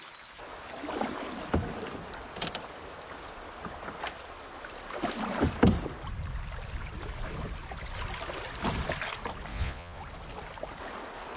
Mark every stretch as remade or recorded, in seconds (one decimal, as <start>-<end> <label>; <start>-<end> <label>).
0.0-9.5 recorded; 9.5-10.0 remade; 10.0-11.4 recorded